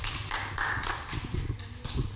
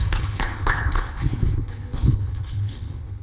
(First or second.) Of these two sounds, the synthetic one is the second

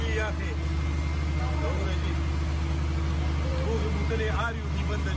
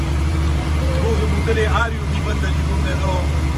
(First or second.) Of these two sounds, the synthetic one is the second